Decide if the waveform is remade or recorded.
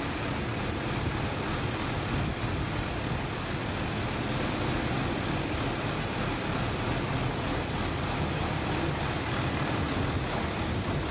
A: recorded